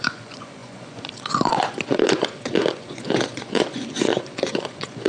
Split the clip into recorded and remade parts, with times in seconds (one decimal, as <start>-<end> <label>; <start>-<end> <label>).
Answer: 0.0-5.1 remade